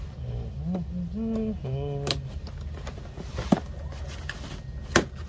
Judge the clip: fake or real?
real